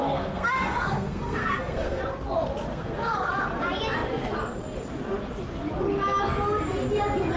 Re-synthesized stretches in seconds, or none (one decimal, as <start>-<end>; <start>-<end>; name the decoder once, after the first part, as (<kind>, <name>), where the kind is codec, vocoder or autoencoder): 0.0-2.0 (codec, SNAC); 2.7-3.3